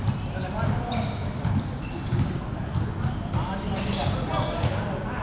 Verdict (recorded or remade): recorded